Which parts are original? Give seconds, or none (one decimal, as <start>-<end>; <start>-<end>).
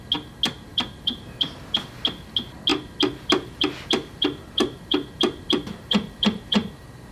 0.0-0.7; 1.9-2.7